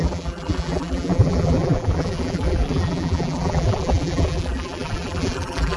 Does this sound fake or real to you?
fake